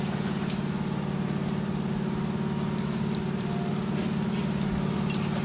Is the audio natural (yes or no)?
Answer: yes